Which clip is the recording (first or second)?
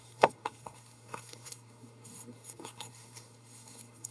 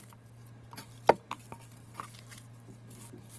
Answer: second